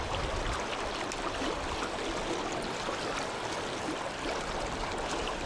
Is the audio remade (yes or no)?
no